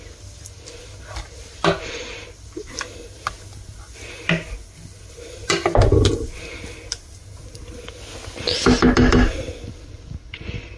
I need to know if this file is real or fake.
real